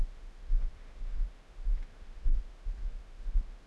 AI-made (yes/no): yes